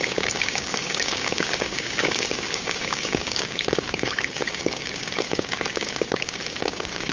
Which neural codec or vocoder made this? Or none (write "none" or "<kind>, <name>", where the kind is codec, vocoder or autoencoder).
codec, DAC